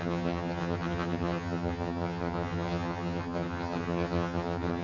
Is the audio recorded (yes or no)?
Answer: no